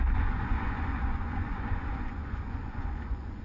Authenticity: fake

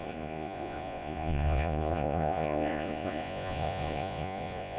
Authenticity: fake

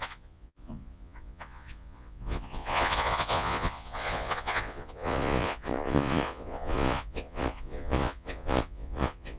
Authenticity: fake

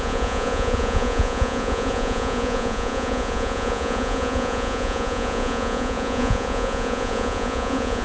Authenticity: fake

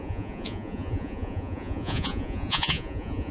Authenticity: fake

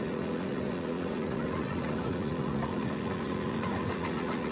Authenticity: fake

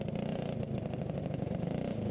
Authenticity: real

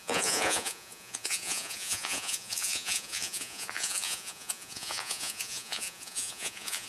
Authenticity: fake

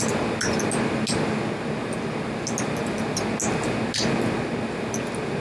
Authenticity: real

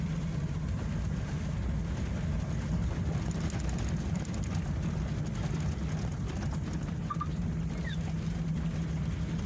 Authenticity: real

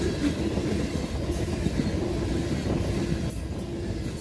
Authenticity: real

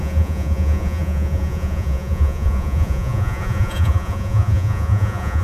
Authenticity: fake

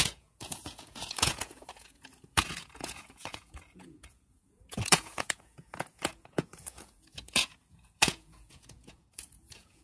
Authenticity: fake